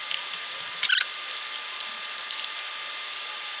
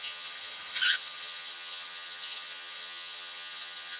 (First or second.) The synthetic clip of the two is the second